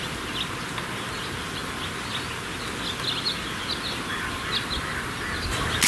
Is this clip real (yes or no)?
yes